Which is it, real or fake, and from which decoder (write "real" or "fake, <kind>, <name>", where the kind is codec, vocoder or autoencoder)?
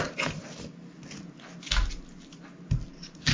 real